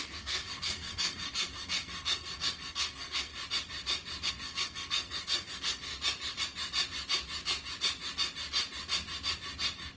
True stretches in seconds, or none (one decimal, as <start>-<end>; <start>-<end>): 3.3-4.3; 5.9-10.0